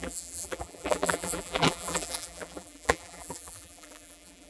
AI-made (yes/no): yes